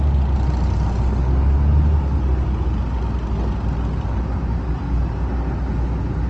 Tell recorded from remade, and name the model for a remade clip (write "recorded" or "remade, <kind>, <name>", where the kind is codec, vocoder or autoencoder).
recorded